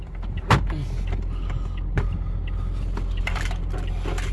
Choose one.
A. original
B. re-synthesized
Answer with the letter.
A